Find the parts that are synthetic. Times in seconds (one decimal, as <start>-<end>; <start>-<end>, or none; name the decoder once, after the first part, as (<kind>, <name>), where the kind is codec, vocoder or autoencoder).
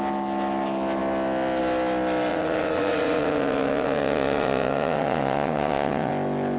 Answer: 2.3-6.1 (vocoder, WaveNeXt)